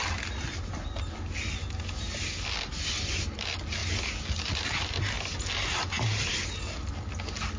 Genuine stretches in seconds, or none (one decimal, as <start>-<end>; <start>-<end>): 0.0-7.6